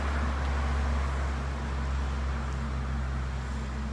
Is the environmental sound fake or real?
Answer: real